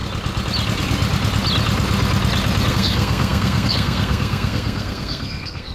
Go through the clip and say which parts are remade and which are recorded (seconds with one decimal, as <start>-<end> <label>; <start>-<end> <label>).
0.0-2.7 recorded; 2.7-5.7 remade